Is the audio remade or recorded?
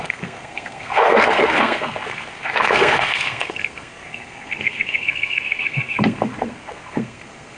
remade